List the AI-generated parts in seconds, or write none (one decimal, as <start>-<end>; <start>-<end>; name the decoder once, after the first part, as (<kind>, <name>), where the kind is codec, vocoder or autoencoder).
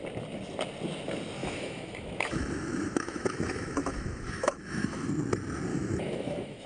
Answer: 1.4-5.1 (autoencoder, DAC-VAE); 5.7-6.7